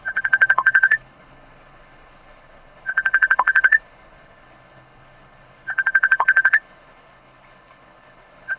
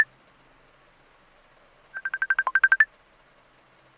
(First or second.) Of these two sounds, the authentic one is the second